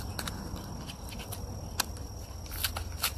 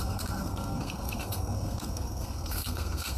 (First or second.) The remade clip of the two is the second